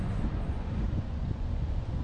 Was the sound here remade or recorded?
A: remade